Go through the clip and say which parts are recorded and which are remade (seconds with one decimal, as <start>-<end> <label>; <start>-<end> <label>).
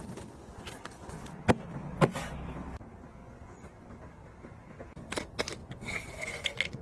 0.0-0.4 recorded; 0.4-1.4 remade; 1.4-3.2 recorded; 3.2-3.9 remade; 3.9-5.6 recorded; 5.6-6.8 remade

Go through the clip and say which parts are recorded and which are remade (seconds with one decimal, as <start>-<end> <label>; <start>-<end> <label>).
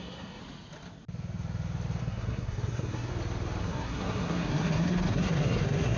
0.0-0.4 remade; 0.4-2.0 recorded; 2.0-3.1 remade; 3.1-3.6 recorded; 3.6-6.0 remade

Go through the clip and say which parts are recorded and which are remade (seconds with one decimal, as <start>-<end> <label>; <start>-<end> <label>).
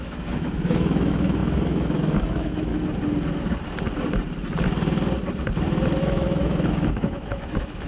0.0-2.7 remade; 2.7-6.0 recorded; 6.0-7.9 remade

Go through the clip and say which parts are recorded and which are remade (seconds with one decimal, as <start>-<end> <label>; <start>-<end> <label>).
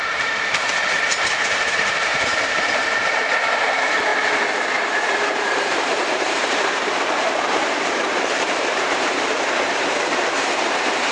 0.0-4.1 remade; 4.1-4.8 recorded; 4.8-11.1 remade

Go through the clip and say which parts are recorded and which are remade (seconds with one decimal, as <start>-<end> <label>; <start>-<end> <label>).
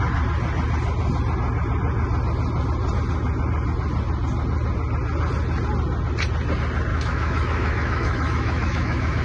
0.0-6.9 recorded; 6.9-9.2 remade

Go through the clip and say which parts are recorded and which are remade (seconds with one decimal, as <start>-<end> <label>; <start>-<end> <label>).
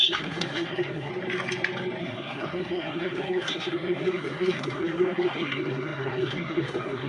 0.0-1.1 remade; 1.1-2.0 recorded; 2.0-7.1 remade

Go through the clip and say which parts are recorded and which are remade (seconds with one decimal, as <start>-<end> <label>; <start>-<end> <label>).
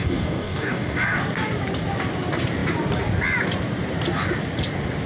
0.0-1.2 remade; 1.2-5.1 recorded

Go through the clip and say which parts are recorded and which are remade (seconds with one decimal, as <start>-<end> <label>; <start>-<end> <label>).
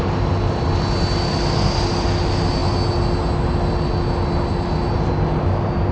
0.0-5.9 recorded